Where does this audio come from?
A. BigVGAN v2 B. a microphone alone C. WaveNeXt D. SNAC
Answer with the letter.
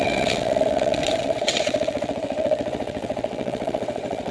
C